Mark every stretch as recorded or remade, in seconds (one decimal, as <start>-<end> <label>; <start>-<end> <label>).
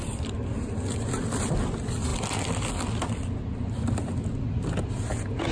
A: 0.0-5.5 recorded